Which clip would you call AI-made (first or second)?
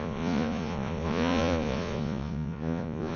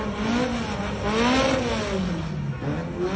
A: first